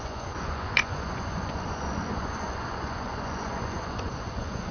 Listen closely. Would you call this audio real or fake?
fake